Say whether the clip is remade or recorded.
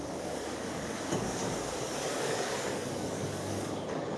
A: remade